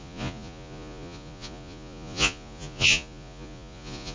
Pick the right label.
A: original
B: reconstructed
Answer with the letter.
B